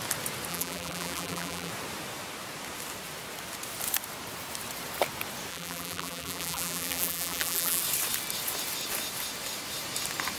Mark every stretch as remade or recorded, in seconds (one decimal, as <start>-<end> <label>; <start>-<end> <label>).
0.0-0.5 recorded; 0.5-1.7 remade; 1.7-5.5 recorded; 5.5-7.8 remade; 7.8-10.4 recorded